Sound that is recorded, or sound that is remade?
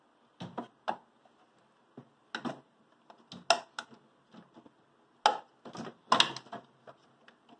recorded